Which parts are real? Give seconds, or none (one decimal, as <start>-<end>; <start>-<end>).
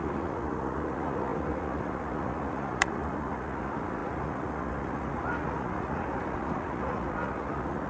none